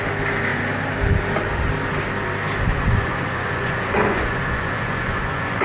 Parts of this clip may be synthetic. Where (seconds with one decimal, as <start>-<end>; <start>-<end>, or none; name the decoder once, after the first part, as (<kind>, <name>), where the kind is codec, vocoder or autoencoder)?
2.7-5.6 (vocoder, Vocos)